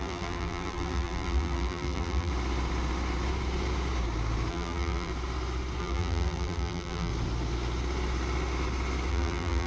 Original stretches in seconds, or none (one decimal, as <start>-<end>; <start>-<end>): 2.3-4.5; 5.1-5.8; 7.1-9.1